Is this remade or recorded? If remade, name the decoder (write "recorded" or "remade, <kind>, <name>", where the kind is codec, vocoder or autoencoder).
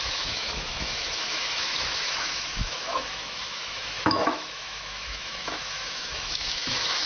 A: remade, autoencoder, DAC-VAE